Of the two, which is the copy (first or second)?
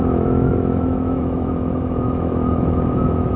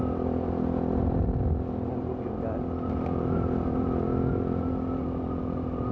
first